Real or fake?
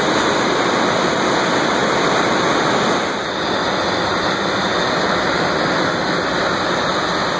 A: real